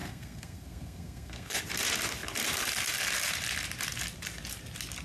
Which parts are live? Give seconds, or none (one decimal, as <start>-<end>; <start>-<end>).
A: 1.6-5.0